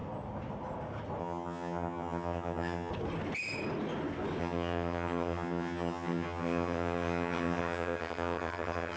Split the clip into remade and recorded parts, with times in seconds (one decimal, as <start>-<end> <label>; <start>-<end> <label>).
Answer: 0.0-1.2 recorded; 1.2-2.9 remade; 2.9-4.4 recorded; 4.4-9.0 remade

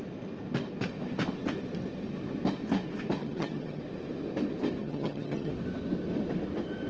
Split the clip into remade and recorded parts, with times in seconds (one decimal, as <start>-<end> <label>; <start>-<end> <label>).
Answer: 0.0-3.2 recorded; 3.2-3.8 remade; 3.8-4.8 recorded; 4.8-5.5 remade; 5.5-6.9 recorded